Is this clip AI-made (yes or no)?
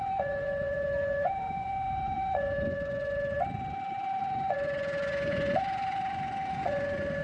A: yes